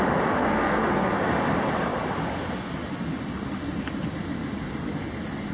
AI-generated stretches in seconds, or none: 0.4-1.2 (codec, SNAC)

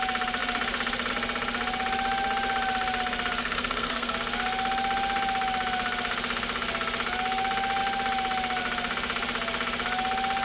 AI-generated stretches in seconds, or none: 3.4-4.1 (codec, SNAC)

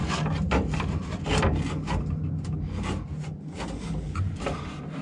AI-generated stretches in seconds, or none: none

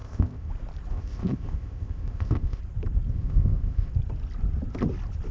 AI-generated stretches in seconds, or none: 0.0-0.5 (codec, ZipCodec); 0.9-2.6; 3.1-3.9

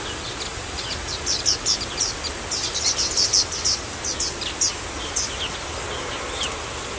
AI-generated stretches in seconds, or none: none

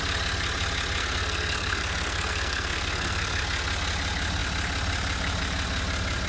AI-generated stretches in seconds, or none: 1.0-3.4 (codec, SNAC)

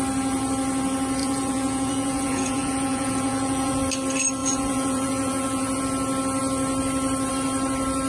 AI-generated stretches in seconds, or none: 1.2-3.8 (vocoder, Vocos); 4.4-5.8

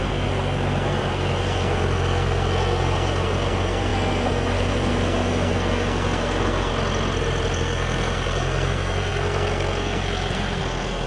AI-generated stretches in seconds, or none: 0.0-6.7 (codec, SNAC); 7.5-11.1